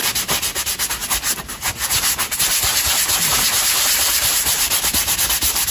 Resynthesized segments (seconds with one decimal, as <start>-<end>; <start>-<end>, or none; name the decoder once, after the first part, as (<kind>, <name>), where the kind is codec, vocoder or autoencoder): 1.3-4.7 (vocoder, BigVGAN v2)